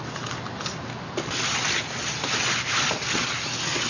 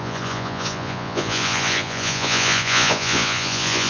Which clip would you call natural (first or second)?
first